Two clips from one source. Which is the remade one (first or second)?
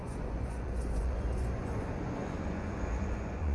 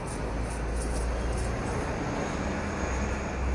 first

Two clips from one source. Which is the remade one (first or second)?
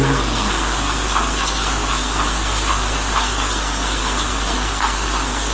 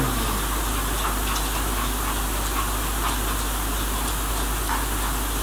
first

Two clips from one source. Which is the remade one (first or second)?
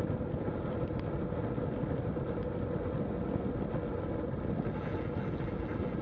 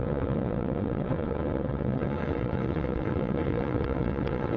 second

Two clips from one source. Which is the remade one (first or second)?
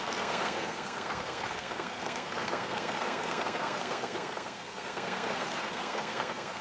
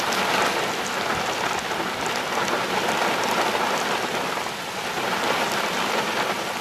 first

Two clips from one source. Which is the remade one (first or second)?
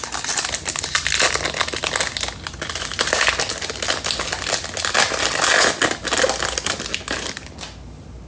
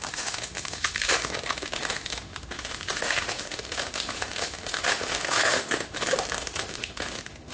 second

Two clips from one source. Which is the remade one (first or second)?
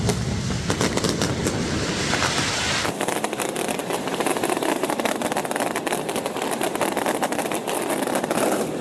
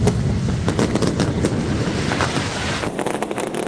first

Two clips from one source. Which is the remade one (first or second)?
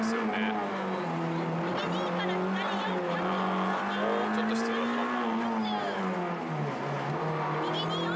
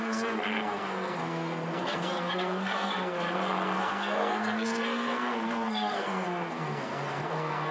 second